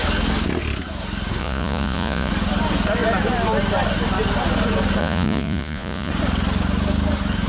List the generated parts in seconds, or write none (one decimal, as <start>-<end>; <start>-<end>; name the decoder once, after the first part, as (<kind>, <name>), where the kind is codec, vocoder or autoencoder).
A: 1.4-2.3 (vocoder, Vocos); 5.0-6.1